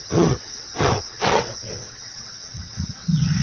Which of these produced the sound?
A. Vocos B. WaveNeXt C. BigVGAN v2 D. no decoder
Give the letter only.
B